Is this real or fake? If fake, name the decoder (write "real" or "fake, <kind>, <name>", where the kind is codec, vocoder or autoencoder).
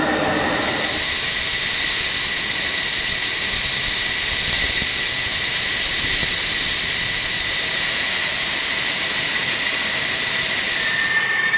real